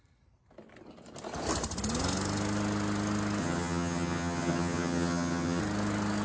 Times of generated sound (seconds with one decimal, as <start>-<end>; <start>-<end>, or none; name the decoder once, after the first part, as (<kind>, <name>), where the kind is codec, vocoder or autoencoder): 3.4-5.6 (vocoder, HiFi-GAN)